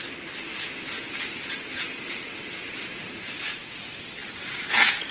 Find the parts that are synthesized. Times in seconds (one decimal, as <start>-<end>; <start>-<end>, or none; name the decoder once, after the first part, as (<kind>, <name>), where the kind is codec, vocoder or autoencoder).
none